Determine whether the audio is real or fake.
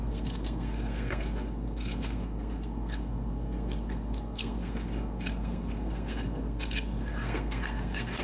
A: fake